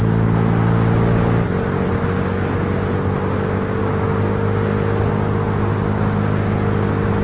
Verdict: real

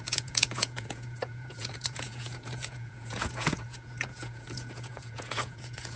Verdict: fake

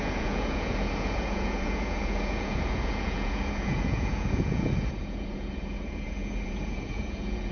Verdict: fake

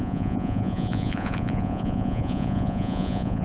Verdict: fake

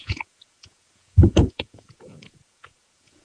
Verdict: fake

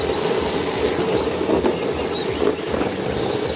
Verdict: real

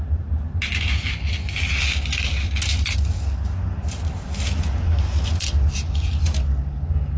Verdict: real